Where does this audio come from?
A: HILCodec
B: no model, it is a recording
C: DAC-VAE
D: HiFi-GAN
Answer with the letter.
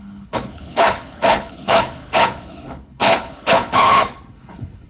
A